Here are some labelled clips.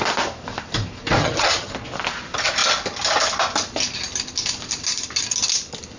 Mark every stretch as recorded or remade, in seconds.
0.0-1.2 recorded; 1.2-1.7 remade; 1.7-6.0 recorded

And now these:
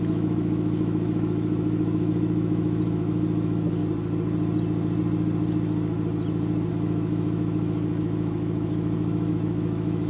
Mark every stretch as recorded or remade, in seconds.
0.0-3.8 remade; 3.8-6.7 recorded; 6.7-10.1 remade